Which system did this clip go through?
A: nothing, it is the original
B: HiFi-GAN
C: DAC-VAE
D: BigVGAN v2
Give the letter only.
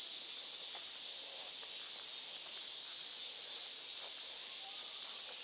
A